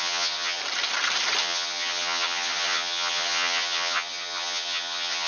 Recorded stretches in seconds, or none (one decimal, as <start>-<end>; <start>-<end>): 0.6-1.4